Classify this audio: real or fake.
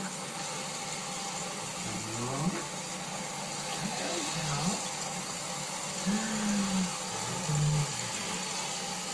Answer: real